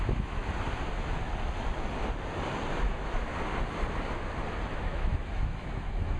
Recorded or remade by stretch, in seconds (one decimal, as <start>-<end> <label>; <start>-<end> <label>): 0.0-0.4 remade; 0.4-2.8 recorded; 2.8-3.3 remade; 3.3-4.7 recorded; 4.7-6.2 remade